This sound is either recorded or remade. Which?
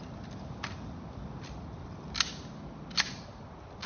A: recorded